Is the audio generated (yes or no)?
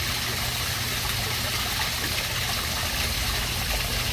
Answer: no